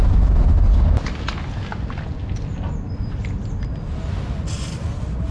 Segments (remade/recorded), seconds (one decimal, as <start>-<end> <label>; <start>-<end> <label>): 0.0-5.3 recorded